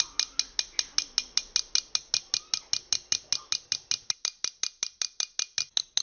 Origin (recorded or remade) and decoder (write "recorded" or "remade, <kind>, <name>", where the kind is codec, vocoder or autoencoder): recorded